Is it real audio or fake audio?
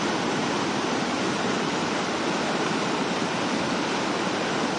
real